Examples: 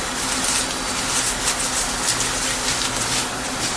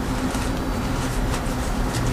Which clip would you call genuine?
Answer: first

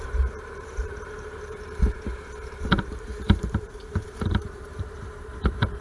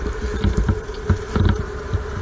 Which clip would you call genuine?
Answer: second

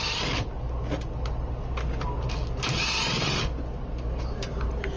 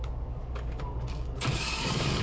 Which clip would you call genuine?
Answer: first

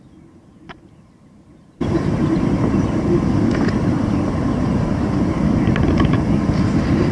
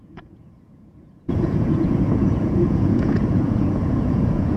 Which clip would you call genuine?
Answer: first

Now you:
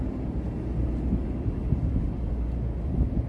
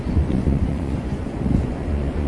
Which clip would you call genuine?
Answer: first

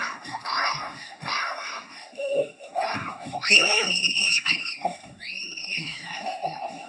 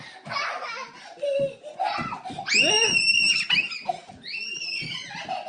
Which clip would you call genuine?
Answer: second